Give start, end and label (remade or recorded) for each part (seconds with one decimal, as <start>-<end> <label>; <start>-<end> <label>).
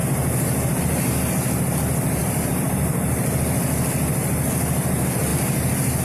0.0-2.2 recorded; 2.2-3.4 remade; 3.4-5.3 recorded; 5.3-6.0 remade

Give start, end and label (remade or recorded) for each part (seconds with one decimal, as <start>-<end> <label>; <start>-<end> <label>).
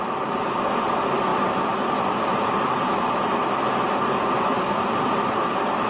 0.0-5.9 recorded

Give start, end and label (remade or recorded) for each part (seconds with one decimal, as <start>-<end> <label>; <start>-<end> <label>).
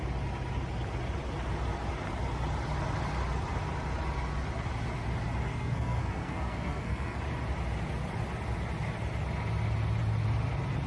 0.0-5.5 recorded; 5.5-7.2 remade; 7.2-10.9 recorded